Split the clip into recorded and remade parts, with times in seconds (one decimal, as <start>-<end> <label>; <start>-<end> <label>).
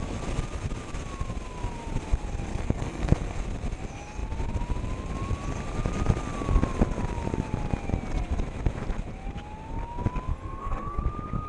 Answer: 0.0-2.5 recorded; 2.5-3.4 remade; 3.4-10.3 recorded; 10.3-11.0 remade; 11.0-11.5 recorded